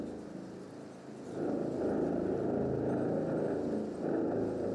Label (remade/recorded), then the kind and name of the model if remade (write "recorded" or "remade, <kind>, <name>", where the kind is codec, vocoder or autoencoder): recorded